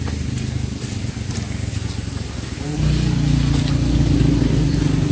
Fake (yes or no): no